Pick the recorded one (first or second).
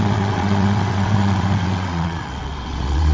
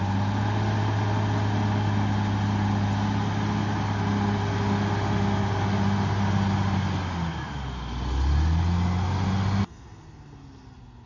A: second